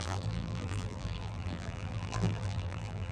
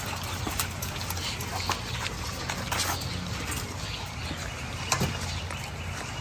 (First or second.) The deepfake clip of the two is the first